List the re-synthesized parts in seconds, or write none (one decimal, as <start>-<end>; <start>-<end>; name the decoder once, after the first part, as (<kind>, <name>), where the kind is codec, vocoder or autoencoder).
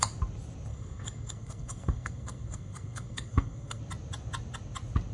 0.7-3.8 (codec, SNAC)